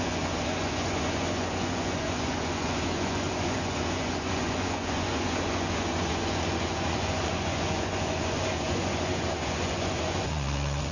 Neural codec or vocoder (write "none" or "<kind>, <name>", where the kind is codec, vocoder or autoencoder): vocoder, Vocos